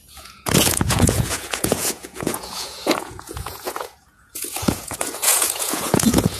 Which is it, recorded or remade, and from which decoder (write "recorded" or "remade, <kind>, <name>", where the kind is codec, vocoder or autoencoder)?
remade, vocoder, Vocos